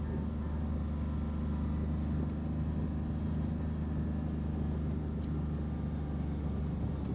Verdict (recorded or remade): recorded